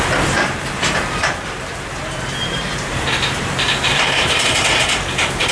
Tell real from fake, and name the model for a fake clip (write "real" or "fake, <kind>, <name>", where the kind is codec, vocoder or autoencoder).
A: fake, vocoder, BigVGAN v2